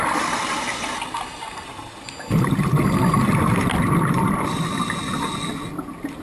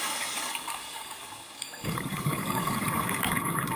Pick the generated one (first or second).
second